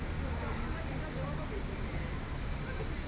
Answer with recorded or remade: recorded